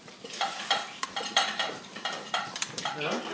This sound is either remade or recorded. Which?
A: remade